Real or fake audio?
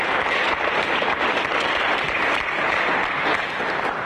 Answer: fake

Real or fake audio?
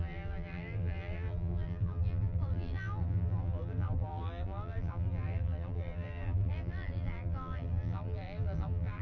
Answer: fake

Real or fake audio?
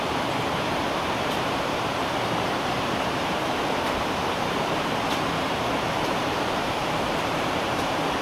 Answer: fake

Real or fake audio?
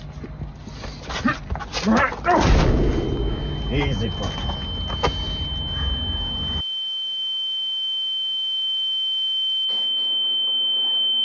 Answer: real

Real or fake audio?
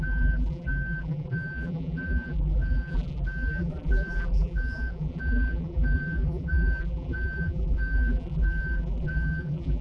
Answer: fake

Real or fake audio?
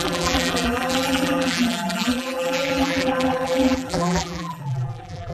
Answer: fake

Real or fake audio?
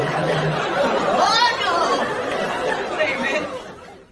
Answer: fake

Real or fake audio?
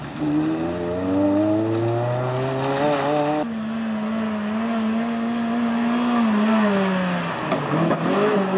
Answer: real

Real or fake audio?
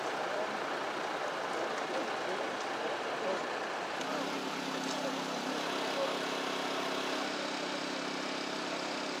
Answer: real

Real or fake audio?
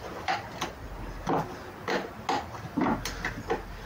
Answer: real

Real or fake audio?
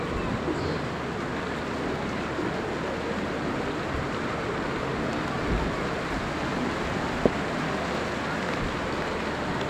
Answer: real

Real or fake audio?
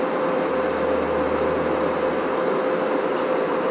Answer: real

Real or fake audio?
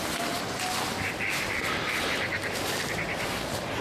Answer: real